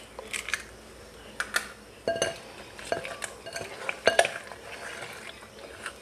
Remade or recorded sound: recorded